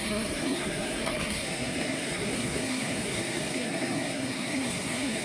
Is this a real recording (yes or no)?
no